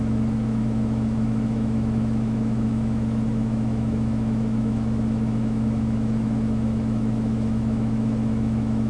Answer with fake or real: fake